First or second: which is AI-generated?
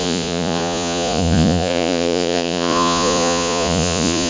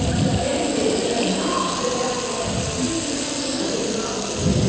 first